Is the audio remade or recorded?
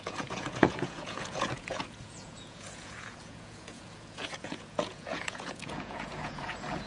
remade